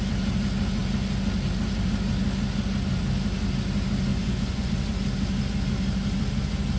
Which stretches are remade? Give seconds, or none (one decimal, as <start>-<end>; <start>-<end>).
4.1-4.7